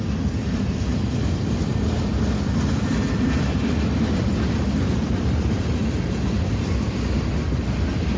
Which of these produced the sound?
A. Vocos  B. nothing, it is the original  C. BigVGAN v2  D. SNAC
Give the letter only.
B